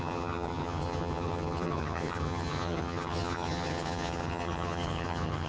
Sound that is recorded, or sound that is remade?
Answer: remade